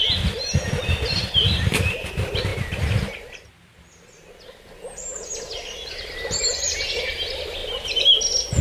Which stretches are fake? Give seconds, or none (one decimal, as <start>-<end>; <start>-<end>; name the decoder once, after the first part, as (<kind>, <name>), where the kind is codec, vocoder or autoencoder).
none